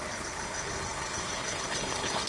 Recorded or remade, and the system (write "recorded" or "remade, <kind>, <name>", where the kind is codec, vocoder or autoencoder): remade, codec, HILCodec